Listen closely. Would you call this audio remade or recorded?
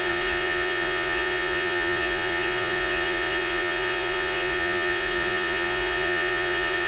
remade